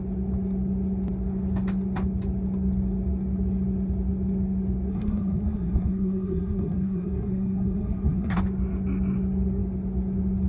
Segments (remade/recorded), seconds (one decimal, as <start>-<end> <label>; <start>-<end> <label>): 0.0-4.9 recorded; 4.9-8.4 remade; 8.4-10.5 recorded